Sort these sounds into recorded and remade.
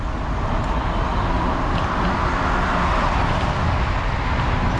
recorded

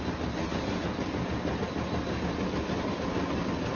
recorded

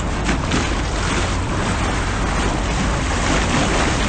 recorded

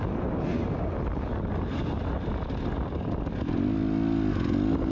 recorded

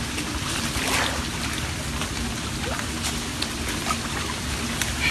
recorded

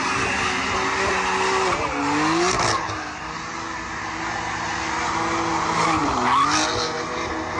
recorded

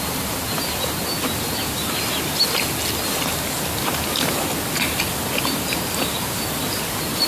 recorded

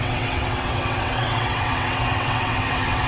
remade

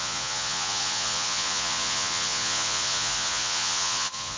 remade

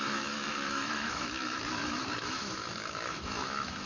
remade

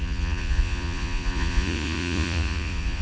remade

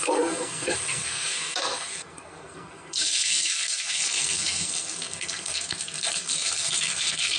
remade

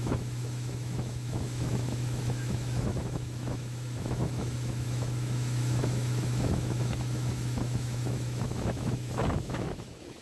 remade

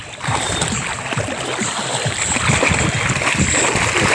recorded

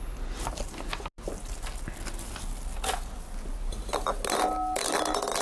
recorded